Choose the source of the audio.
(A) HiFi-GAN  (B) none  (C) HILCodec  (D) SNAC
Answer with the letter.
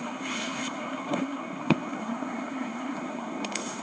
D